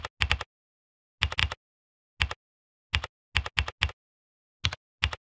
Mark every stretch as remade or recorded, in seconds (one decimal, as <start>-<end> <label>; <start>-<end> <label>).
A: 0.0-5.3 recorded